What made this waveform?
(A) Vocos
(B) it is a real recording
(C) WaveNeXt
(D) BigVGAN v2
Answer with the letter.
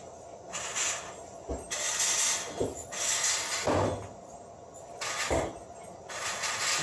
B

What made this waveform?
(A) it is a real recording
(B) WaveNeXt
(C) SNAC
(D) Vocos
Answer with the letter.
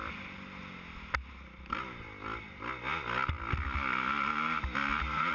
A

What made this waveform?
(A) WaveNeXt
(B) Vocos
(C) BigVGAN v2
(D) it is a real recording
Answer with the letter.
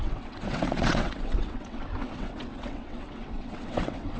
A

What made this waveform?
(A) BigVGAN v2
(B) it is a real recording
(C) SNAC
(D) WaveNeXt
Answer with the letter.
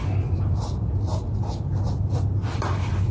B